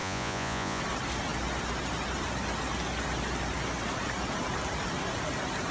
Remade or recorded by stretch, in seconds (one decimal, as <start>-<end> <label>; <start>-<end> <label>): 0.0-0.8 remade; 0.8-5.7 recorded